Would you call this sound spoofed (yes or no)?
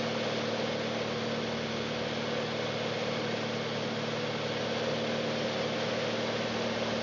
no